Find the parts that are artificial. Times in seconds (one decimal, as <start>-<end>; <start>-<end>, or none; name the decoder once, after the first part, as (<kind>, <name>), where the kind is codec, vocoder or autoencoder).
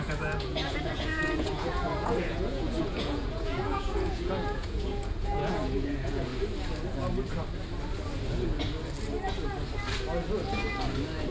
0.0-6.3 (vocoder, Vocos)